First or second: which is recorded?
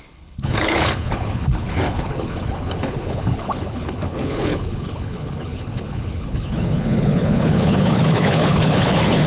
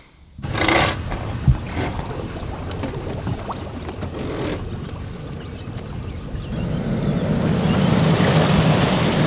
second